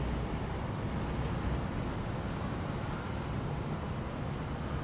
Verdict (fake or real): real